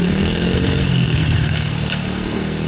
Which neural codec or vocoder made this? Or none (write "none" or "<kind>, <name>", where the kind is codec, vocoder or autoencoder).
codec, SNAC